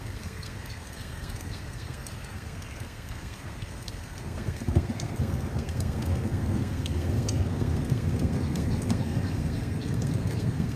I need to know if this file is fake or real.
fake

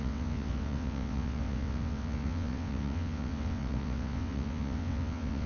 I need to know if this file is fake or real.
fake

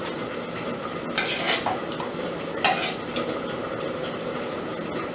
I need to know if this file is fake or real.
real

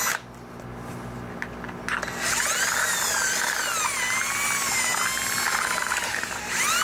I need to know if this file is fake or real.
real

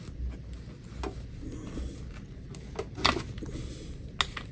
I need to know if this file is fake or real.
real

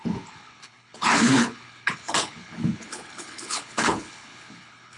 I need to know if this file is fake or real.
fake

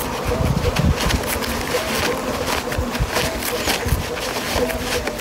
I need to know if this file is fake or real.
real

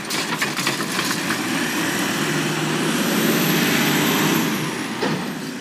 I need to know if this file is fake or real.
real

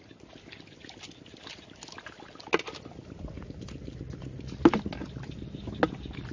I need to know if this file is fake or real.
real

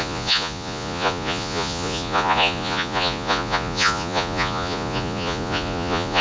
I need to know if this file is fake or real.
fake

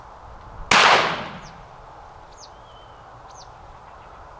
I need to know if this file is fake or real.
real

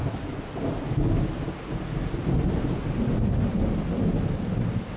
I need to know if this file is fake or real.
real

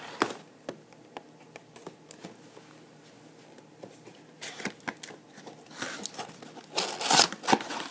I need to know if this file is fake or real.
real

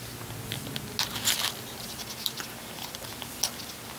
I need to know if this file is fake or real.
real